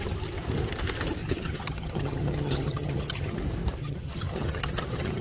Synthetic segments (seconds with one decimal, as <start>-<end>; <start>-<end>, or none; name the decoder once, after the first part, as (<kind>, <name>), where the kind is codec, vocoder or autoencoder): 1.2-3.4 (vocoder, HiFi-GAN); 3.8-5.2